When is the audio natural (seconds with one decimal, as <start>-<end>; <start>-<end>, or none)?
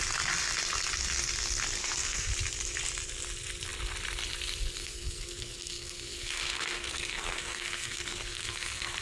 0.0-1.8; 2.3-4.8